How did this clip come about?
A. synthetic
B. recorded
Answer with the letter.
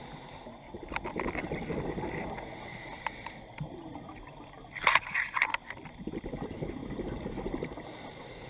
B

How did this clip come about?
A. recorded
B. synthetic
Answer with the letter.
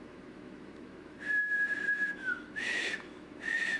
B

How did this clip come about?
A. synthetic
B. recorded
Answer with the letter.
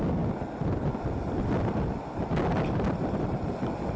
B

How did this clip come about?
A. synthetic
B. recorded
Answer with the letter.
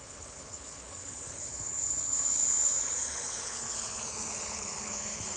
A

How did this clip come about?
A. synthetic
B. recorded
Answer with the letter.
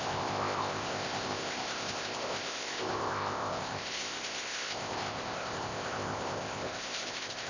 A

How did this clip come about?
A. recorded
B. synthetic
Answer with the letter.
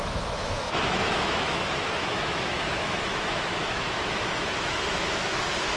B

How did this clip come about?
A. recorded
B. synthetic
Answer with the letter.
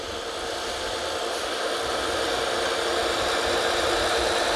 A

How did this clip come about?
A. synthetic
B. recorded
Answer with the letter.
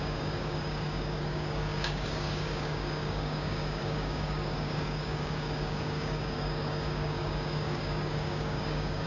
A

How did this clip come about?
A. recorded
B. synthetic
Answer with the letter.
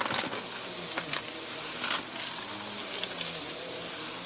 A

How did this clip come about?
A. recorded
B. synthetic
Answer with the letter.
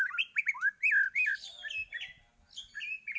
A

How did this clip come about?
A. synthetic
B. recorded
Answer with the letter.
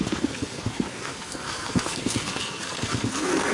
A